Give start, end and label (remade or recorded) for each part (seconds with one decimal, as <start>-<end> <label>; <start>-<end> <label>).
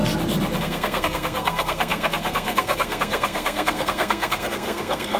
0.0-0.6 recorded; 0.6-5.2 remade